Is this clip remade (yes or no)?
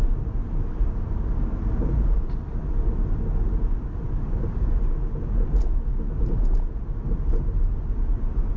no